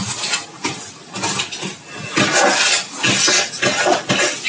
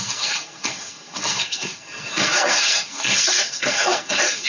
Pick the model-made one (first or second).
second